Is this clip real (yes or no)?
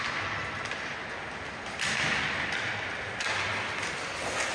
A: yes